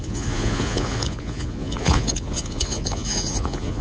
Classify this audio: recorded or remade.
remade